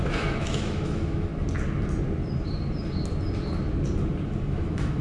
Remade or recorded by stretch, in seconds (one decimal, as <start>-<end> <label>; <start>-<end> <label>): 0.0-1.3 remade; 1.3-4.3 recorded; 4.3-5.0 remade